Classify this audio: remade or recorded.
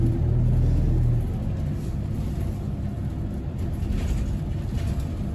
recorded